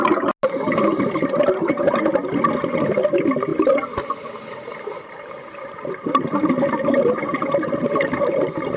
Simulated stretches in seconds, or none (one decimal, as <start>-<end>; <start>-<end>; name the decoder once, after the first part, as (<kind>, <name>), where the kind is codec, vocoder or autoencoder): 3.5-8.2 (vocoder, BigVGAN v2)